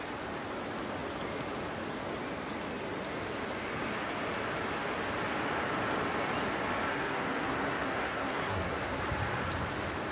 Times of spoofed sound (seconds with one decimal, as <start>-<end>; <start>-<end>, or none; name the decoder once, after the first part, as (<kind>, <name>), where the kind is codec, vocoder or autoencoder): 6.9-8.8 (codec, SNAC)